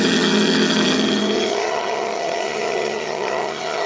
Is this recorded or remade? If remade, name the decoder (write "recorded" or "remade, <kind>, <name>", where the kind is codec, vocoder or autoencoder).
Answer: remade, vocoder, HiFi-GAN